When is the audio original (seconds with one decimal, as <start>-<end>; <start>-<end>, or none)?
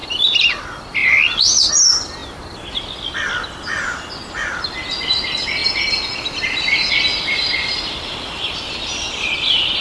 0.0-1.0; 1.7-9.8